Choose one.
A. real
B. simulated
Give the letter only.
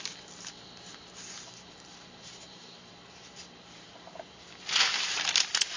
B